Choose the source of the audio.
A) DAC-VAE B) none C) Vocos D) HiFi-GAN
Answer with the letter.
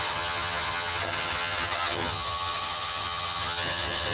D